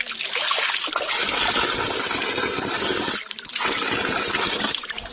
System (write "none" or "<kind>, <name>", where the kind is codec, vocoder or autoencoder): none